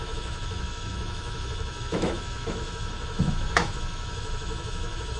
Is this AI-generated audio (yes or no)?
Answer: yes